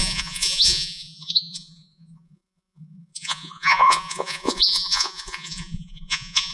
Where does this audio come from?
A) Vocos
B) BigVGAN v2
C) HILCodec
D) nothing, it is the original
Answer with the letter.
A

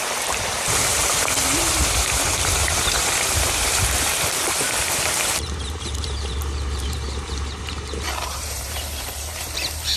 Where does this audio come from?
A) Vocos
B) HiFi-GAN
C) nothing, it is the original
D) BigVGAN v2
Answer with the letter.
D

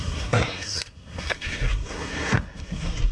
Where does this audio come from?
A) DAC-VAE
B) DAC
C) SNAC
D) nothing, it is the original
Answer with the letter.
C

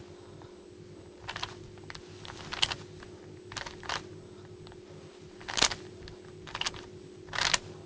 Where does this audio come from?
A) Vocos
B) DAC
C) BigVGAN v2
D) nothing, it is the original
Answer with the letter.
D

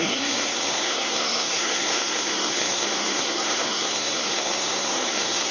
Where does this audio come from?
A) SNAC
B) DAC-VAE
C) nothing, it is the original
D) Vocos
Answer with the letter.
A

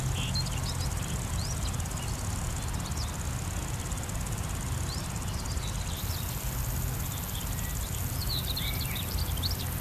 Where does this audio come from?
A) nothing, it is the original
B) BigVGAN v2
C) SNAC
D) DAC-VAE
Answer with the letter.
A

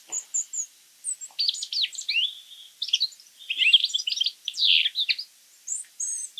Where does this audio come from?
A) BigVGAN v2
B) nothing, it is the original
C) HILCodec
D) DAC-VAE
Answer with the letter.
B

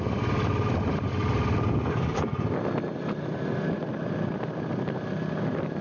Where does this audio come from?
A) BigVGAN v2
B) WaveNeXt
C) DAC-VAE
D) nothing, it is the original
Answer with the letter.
D